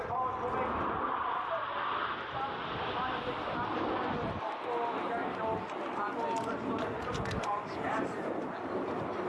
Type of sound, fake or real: real